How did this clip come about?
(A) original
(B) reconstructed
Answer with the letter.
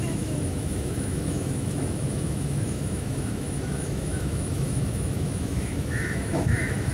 B